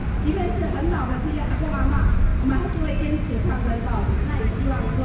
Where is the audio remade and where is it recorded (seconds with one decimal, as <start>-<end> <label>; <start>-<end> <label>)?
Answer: 0.0-5.0 recorded